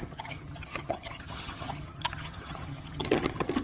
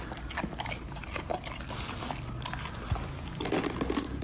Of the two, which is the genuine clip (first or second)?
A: second